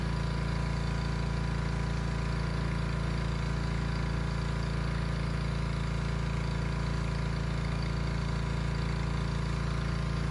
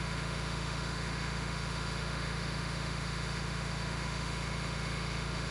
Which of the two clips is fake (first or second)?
second